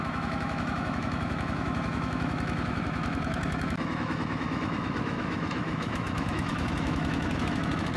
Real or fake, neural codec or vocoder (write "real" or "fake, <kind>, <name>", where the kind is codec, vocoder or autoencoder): fake, autoencoder, DAC-VAE